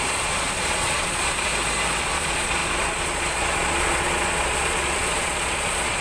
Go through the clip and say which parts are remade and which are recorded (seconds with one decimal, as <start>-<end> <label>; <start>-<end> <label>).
0.0-1.5 remade; 1.5-2.0 recorded; 2.0-6.0 remade